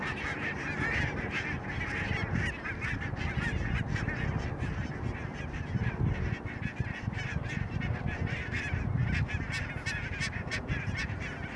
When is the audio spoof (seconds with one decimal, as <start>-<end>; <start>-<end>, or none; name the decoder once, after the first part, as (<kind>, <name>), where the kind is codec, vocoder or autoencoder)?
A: none